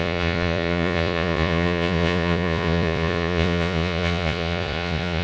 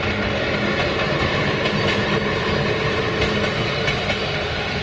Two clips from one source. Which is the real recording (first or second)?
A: second